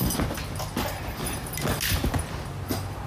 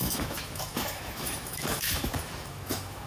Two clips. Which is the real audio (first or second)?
first